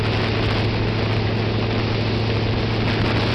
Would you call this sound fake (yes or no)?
no